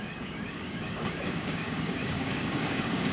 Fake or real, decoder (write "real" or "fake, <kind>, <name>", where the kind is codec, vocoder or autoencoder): fake, codec, DAC